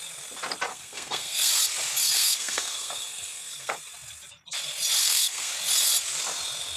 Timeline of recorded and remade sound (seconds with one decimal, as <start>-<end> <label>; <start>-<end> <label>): 0.0-0.7 recorded; 0.7-1.5 remade; 1.5-2.0 recorded; 2.0-3.8 remade; 3.8-5.0 recorded; 5.0-5.5 remade; 5.5-6.8 recorded

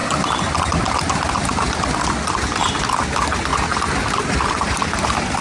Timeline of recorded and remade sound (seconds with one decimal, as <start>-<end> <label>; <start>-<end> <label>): 0.0-5.4 recorded

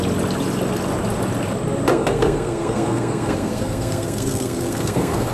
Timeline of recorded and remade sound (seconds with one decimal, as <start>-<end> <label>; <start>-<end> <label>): 0.0-1.9 recorded; 1.9-5.3 remade

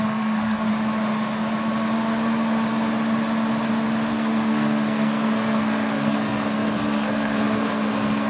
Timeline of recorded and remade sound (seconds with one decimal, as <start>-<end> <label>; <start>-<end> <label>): 0.0-0.7 remade; 0.7-4.1 recorded; 4.1-8.3 remade

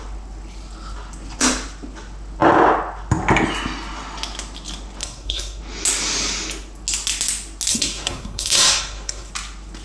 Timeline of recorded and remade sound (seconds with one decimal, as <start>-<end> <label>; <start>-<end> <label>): 0.0-5.0 recorded; 5.0-5.6 remade; 5.6-7.7 recorded; 7.7-9.3 remade; 9.3-9.8 recorded

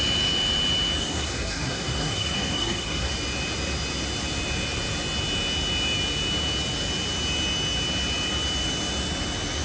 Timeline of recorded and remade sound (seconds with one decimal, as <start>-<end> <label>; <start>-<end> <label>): 0.0-1.0 recorded; 1.0-3.1 remade; 3.1-9.6 recorded